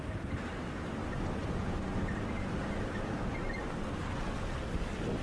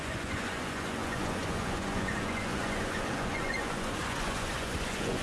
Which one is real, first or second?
first